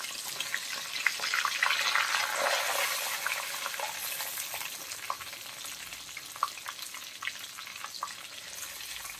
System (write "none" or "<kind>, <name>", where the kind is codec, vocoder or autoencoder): none